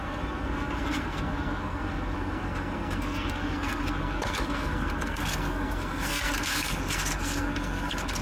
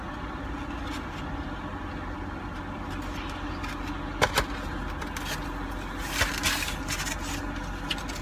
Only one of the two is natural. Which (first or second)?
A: second